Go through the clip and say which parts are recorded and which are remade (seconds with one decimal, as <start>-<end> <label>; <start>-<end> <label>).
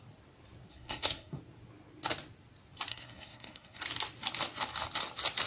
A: 0.0-0.7 recorded; 0.7-1.4 remade; 1.4-2.9 recorded; 2.9-3.8 remade; 3.8-5.5 recorded